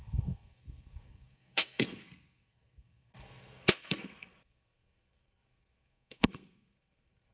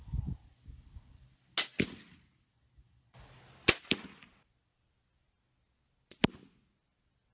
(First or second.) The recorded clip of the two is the second